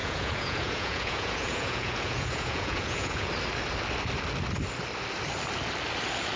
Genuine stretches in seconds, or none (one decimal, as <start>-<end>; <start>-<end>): 3.3-6.4